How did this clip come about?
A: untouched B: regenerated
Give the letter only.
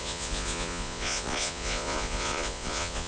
B